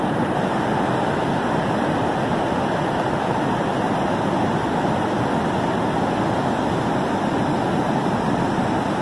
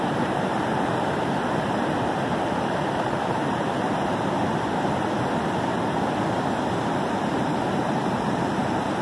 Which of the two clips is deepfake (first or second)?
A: second